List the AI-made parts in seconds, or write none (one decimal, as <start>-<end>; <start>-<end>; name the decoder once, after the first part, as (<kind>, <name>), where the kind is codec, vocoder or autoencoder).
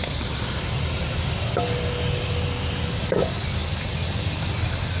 none